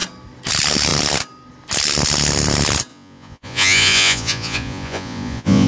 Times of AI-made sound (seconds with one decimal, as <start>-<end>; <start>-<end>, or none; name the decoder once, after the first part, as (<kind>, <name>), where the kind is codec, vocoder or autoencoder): 2.9-5.7 (vocoder, Vocos)